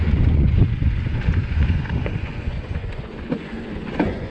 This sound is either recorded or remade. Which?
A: remade